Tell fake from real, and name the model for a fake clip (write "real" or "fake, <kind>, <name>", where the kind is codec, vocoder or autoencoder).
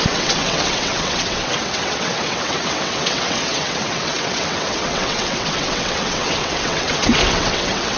fake, vocoder, WaveNeXt